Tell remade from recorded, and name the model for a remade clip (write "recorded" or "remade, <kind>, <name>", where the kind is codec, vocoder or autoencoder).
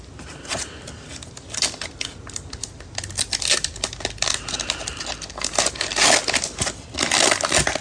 recorded